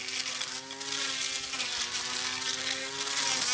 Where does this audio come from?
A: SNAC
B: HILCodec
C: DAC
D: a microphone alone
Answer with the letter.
D